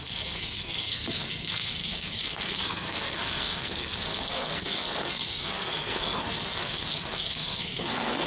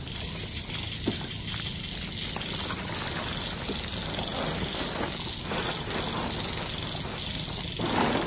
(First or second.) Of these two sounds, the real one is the second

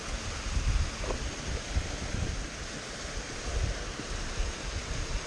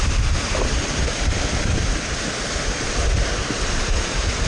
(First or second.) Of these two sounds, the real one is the first